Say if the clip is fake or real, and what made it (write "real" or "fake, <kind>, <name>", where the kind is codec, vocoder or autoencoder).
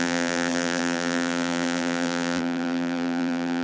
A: fake, vocoder, BigVGAN v2